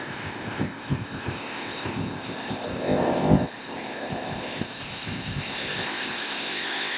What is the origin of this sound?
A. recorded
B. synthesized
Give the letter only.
B